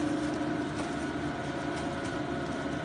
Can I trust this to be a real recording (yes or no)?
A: yes